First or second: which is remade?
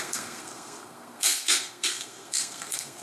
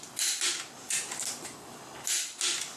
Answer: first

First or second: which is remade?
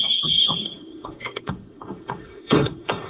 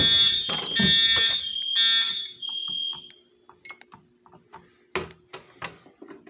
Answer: first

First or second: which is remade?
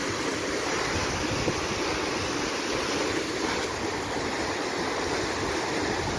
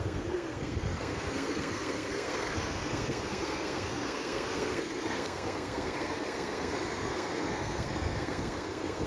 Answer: second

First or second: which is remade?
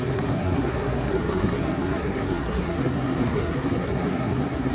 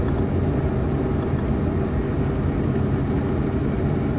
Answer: first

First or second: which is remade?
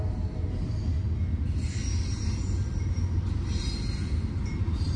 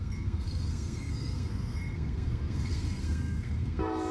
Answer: second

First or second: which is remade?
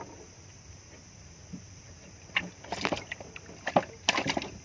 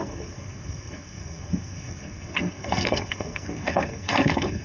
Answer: second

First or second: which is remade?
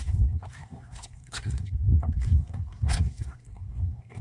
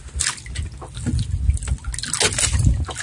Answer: first